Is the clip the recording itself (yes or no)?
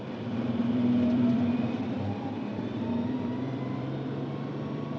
no